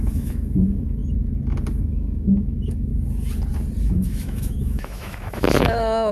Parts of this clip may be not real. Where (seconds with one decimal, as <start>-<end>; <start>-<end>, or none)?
0.0-1.0; 1.8-2.9; 3.8-6.1